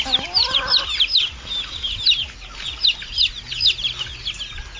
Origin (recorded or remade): recorded